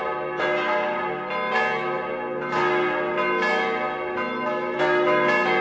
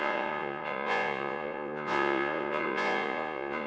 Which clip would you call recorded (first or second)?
first